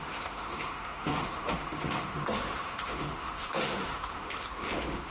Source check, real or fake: fake